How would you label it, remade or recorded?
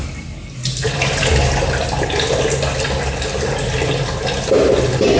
recorded